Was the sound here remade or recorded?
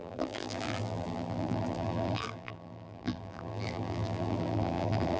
remade